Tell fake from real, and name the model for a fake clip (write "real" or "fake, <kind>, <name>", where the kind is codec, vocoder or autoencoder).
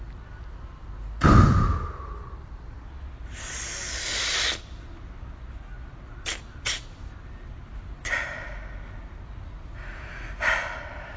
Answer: real